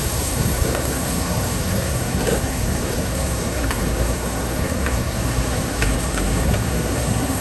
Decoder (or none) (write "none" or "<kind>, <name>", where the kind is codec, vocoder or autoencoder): codec, SNAC